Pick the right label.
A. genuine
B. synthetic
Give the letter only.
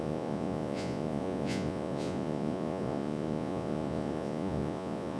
B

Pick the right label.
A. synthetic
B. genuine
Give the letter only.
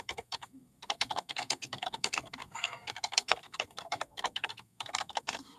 A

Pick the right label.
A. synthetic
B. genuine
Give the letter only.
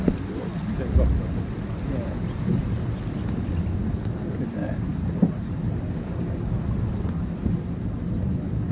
B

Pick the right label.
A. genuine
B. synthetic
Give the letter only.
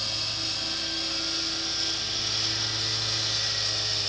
A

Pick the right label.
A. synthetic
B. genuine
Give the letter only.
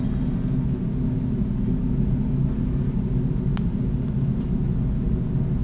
B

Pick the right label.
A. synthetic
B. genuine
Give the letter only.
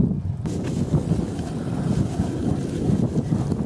B